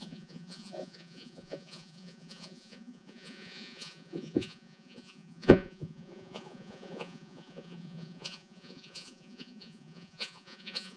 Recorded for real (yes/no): no